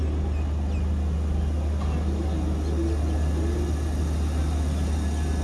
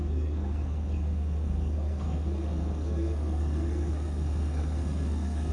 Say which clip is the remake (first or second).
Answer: second